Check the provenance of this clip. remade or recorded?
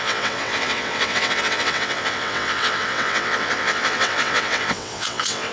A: remade